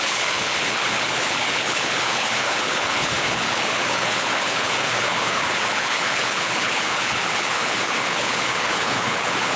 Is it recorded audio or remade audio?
remade